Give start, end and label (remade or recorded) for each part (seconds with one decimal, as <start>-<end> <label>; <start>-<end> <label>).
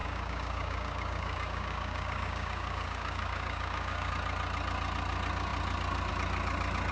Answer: 0.0-4.1 remade; 4.1-6.9 recorded